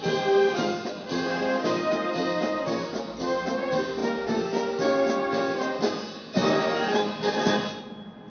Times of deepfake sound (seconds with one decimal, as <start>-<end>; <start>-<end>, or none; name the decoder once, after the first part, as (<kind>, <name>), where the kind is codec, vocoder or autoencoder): 1.3-2.1 (codec, DAC)